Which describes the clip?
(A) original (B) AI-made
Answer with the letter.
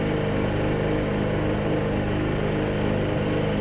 A